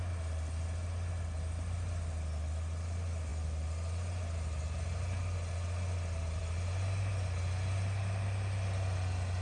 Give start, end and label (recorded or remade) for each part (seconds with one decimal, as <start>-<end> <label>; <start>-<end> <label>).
0.0-9.4 recorded

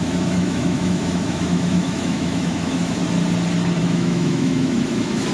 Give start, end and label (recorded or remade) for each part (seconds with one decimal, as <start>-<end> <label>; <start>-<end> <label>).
0.0-3.0 remade; 3.0-3.8 recorded; 3.8-5.3 remade